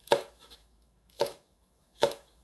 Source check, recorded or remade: remade